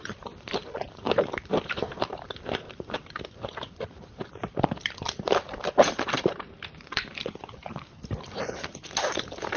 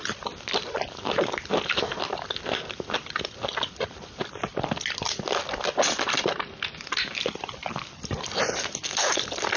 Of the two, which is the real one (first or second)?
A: second